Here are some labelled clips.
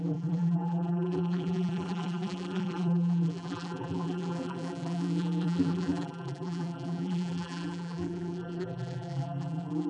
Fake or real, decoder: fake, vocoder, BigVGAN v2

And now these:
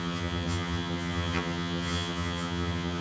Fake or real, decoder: fake, vocoder, HiFi-GAN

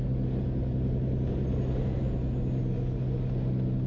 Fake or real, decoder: real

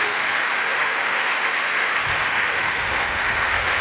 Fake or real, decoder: fake, autoencoder, DAC-VAE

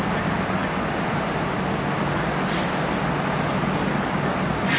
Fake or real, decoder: real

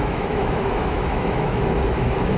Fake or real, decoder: fake, autoencoder, DAC-VAE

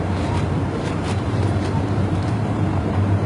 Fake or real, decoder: fake, vocoder, BigVGAN v2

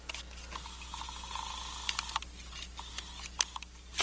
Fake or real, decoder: real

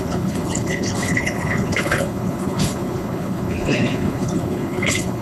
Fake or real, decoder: fake, codec, HILCodec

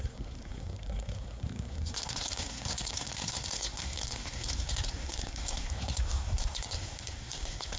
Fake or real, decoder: fake, codec, SNAC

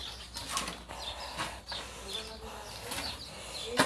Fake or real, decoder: real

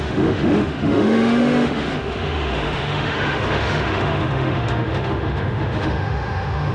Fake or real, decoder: fake, autoencoder, DAC-VAE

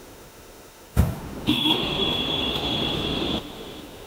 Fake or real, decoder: fake, autoencoder, DAC-VAE